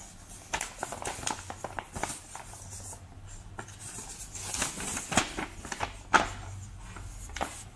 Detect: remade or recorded recorded